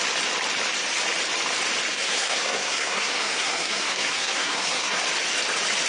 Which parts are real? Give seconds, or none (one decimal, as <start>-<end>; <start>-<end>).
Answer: 0.0-1.9; 5.0-5.9